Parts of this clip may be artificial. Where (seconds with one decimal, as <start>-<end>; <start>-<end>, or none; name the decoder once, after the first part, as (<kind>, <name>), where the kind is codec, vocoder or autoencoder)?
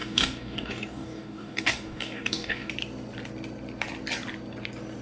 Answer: 0.0-2.7 (codec, DAC)